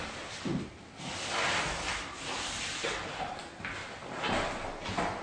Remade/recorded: recorded